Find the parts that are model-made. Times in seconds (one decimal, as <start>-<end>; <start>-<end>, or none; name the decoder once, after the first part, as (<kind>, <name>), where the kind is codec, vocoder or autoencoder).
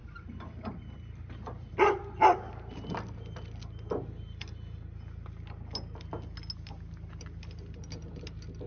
0.0-2.0 (vocoder, BigVGAN v2)